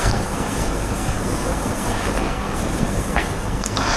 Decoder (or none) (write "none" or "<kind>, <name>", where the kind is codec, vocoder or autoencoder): codec, SNAC